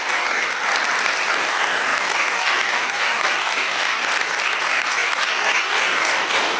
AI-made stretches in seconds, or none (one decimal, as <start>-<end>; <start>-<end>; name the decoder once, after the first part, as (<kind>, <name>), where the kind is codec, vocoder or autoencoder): 0.0-0.7 (codec, DAC); 1.3-4.0; 4.6-6.6